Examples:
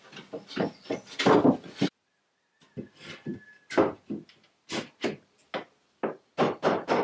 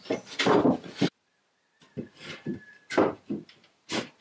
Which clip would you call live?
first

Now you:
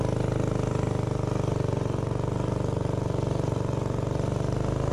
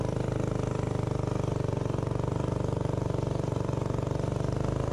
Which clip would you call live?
first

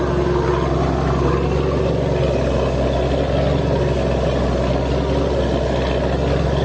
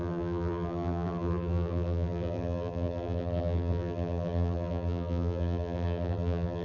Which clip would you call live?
first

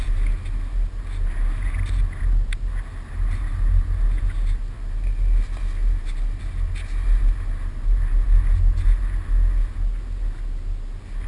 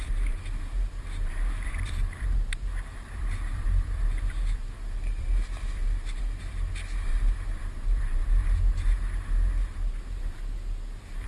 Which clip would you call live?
first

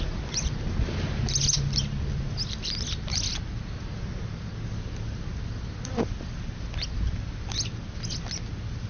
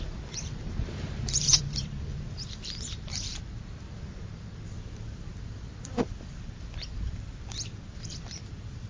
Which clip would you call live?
first